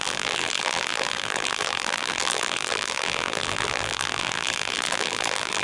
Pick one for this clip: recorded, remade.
remade